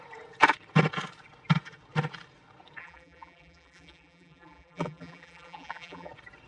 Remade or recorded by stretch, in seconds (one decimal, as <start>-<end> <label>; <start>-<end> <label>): 0.0-2.8 recorded; 2.8-6.1 remade; 6.1-6.5 recorded